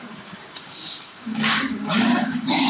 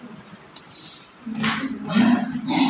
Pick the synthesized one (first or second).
first